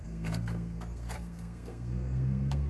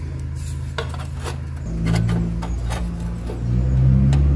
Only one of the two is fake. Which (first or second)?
first